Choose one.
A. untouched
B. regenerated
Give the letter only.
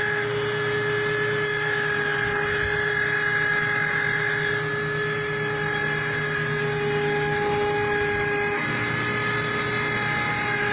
A